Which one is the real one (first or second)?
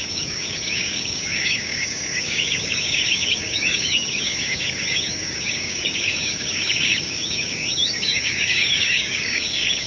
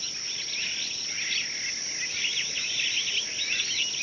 second